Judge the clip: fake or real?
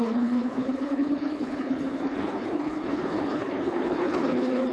fake